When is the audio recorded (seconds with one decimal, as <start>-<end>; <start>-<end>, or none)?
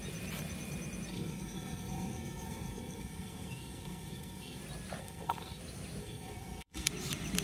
0.0-1.1; 4.6-5.0; 5.6-6.0; 6.9-7.4